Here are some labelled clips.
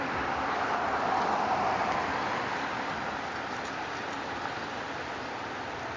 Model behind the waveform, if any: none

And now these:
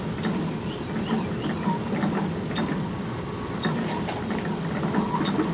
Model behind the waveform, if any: none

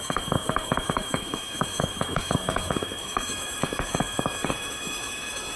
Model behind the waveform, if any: autoencoder, DAC-VAE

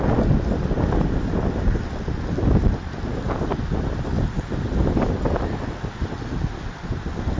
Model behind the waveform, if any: none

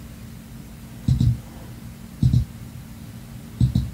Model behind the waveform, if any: none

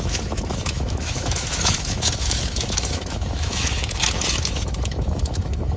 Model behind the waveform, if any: autoencoder, DAC-VAE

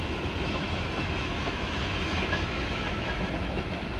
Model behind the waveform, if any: autoencoder, DAC-VAE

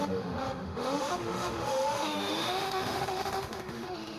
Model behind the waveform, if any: autoencoder, DAC-VAE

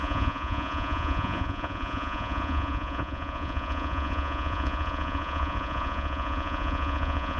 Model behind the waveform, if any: vocoder, Vocos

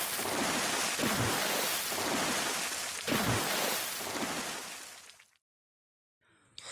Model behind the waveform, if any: none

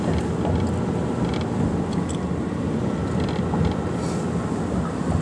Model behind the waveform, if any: none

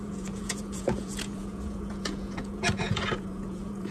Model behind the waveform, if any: vocoder, Vocos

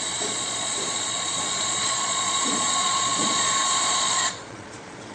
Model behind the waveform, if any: vocoder, Vocos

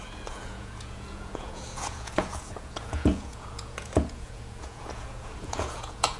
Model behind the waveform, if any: vocoder, Vocos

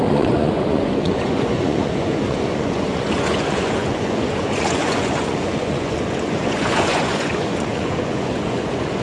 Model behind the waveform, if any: vocoder, Vocos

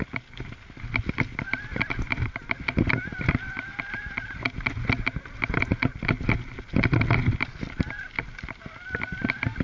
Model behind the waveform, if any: none